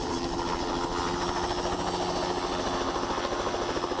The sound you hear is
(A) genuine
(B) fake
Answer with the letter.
A